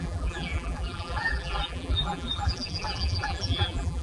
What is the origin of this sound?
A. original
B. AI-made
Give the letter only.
B